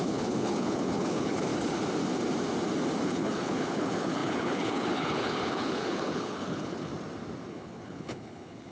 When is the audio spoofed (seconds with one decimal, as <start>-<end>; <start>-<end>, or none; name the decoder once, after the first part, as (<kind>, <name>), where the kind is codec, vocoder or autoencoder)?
0.0-1.5 (codec, HILCodec); 3.0-6.9; 7.5-8.7